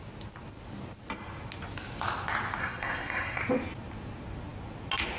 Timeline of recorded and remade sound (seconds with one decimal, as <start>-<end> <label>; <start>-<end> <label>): 0.0-2.6 recorded; 2.6-3.4 remade; 3.4-5.2 recorded